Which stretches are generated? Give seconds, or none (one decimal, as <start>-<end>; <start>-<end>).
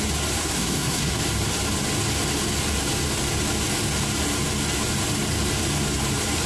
0.4-1.2